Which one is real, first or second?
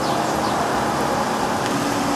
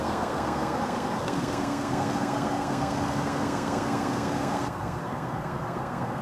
first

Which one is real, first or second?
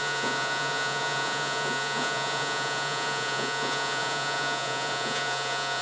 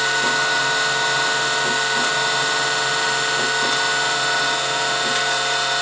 second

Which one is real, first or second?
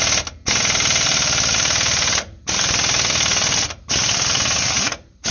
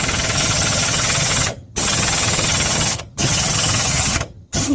first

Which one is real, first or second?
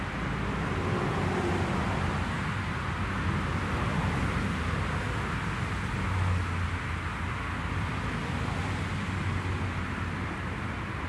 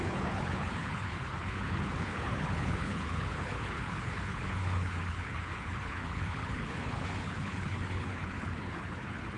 first